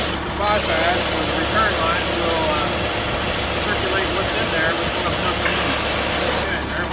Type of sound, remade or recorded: recorded